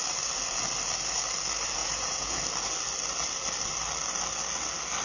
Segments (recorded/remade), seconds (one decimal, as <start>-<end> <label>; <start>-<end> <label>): 0.0-1.8 recorded; 1.8-2.4 remade; 2.4-5.0 recorded